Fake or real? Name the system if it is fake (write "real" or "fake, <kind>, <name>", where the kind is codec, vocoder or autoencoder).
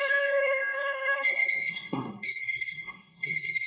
fake, codec, SNAC